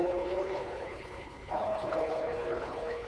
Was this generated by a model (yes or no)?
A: yes